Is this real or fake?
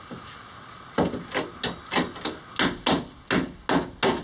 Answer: real